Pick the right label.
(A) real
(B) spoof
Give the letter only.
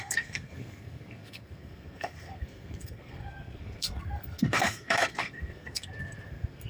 B